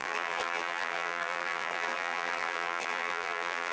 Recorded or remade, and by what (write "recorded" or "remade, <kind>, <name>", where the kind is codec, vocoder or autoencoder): remade, vocoder, BigVGAN v2